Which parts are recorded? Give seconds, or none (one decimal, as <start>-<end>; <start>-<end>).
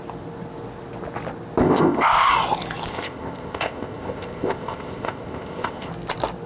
0.0-1.6; 2.3-2.9; 5.9-6.5